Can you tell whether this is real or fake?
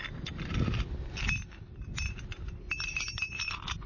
real